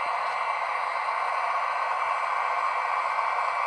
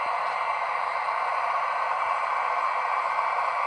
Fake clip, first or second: second